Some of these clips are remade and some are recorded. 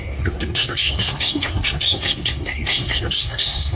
remade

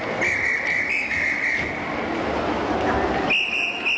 recorded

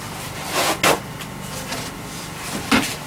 recorded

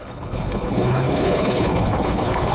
remade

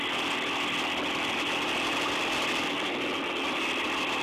recorded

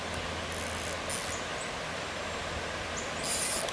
recorded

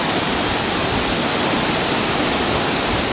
recorded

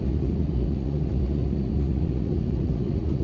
remade